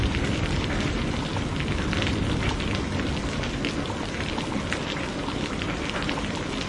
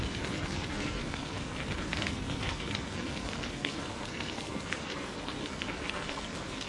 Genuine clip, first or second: first